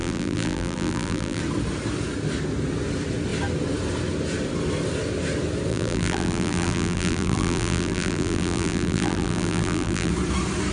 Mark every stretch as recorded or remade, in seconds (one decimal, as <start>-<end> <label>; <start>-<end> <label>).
0.0-1.4 remade; 1.4-5.7 recorded; 5.7-10.1 remade; 10.1-10.7 recorded